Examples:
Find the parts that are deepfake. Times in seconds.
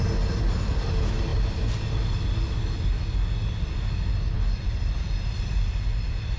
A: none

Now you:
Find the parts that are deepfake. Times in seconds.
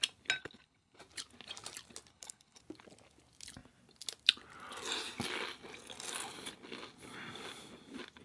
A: 0.4-1.0 (codec, HILCodec); 2.1-2.6